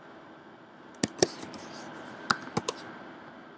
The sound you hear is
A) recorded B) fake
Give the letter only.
A